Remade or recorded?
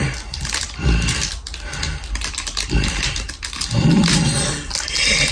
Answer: recorded